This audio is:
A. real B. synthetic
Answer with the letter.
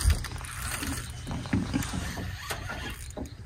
A